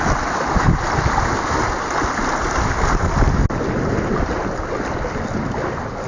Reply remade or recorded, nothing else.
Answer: recorded